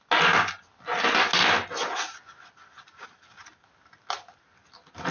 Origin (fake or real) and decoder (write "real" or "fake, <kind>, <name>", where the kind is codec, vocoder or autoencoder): real